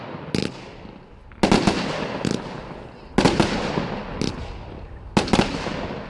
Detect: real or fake real